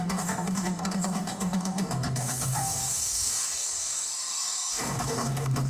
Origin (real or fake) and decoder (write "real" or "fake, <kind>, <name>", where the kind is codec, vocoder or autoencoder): fake, codec, DAC